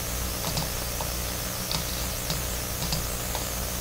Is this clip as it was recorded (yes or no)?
yes